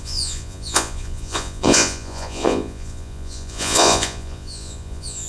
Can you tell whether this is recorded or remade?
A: remade